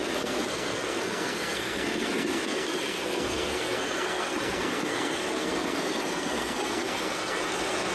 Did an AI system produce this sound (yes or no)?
yes